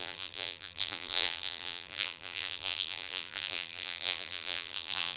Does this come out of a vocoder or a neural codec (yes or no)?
yes